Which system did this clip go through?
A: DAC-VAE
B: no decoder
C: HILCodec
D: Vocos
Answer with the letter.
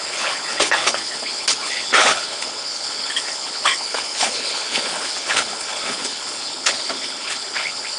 C